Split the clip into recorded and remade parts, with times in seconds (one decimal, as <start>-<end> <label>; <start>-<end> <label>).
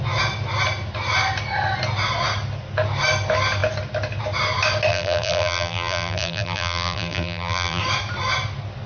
0.0-4.9 recorded; 4.9-7.8 remade; 7.8-8.9 recorded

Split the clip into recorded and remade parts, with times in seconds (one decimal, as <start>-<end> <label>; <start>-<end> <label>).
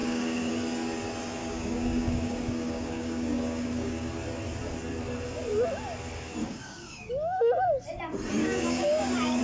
0.0-0.5 remade; 0.5-1.4 recorded; 1.4-4.1 remade; 4.1-6.4 recorded; 6.4-7.1 remade; 7.1-8.4 recorded; 8.4-9.4 remade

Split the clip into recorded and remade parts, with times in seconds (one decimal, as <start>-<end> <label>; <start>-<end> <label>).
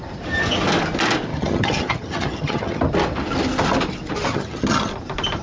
0.0-1.3 recorded; 1.3-2.8 remade; 2.8-4.3 recorded; 4.3-4.9 remade; 4.9-5.4 recorded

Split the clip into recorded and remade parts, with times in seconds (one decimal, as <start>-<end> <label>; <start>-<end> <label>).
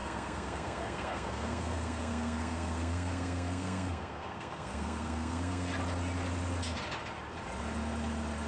0.0-5.7 remade; 5.7-8.5 recorded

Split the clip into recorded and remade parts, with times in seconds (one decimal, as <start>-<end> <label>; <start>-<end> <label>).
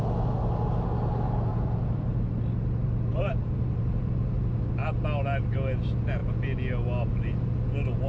0.0-1.5 recorded; 1.5-2.2 remade; 2.2-3.1 recorded; 3.1-4.1 remade; 4.1-8.1 recorded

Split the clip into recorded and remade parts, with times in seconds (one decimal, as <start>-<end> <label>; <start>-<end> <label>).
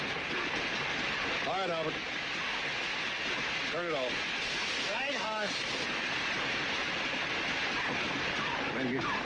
0.0-4.9 recorded; 4.9-5.6 remade; 5.6-9.2 recorded